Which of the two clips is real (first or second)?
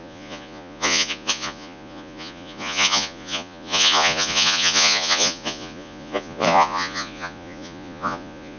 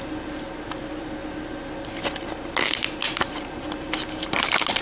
second